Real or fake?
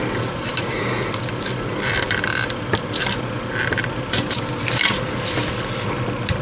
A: real